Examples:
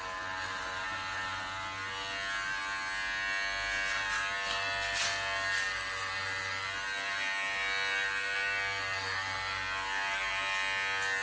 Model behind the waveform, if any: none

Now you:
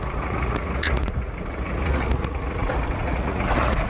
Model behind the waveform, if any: vocoder, Vocos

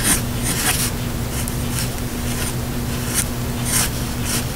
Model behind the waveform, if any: none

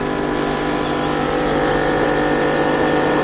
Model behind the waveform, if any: none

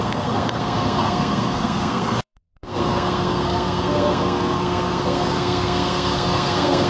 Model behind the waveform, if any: codec, SNAC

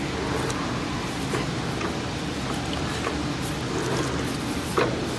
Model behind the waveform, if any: none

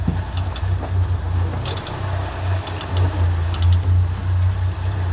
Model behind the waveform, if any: none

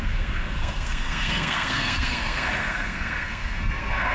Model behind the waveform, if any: codec, SNAC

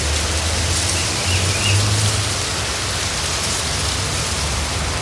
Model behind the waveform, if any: none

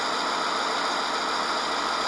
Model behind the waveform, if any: none